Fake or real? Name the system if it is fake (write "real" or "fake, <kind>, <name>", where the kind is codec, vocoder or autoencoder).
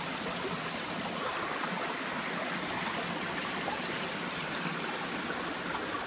real